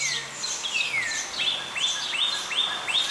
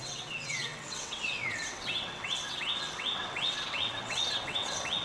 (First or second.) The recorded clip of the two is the first